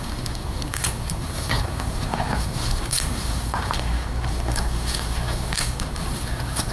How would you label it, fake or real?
fake